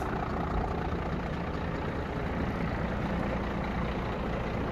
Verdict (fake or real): real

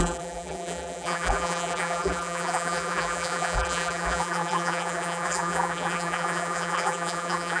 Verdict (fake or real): fake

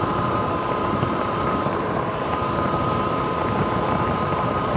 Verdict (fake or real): fake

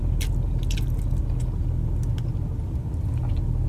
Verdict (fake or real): real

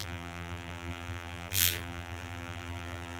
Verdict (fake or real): fake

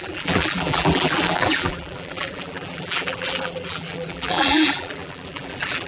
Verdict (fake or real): fake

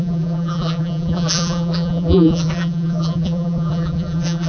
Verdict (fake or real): fake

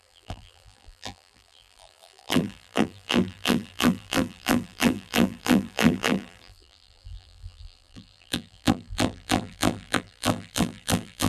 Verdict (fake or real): fake